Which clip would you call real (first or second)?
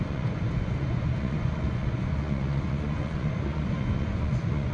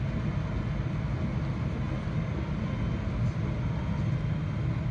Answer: second